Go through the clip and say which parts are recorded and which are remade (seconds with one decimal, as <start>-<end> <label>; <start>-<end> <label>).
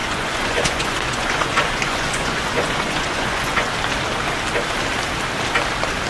0.0-3.7 remade; 3.7-6.1 recorded